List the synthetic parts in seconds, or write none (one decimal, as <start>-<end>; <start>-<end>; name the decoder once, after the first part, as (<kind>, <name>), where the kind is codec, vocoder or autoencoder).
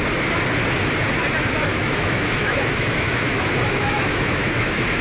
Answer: 1.7-5.0 (autoencoder, DAC-VAE)